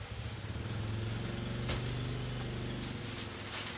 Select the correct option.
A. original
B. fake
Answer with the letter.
A